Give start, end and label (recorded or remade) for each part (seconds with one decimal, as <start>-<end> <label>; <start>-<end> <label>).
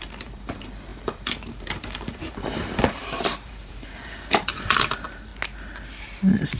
0.0-5.3 remade; 5.3-6.6 recorded